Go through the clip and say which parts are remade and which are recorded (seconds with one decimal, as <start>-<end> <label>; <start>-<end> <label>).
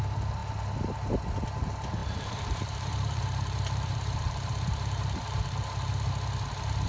0.0-2.0 recorded; 2.0-6.1 remade; 6.1-6.9 recorded